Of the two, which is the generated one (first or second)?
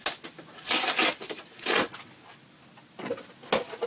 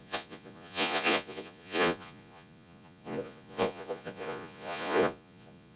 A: second